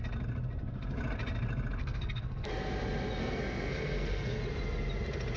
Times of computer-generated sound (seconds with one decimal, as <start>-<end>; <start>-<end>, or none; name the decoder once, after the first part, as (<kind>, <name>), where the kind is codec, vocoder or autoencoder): 1.8-2.5 (codec, SNAC); 3.2-4.4